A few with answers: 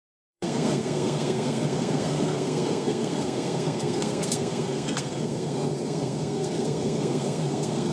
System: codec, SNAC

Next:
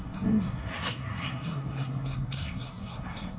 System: codec, SNAC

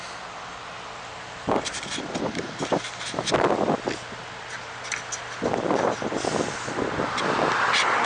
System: none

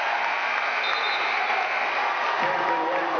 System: none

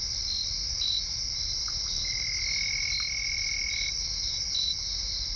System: none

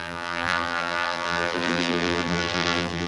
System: vocoder, BigVGAN v2